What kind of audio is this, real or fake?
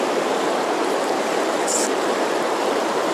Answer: fake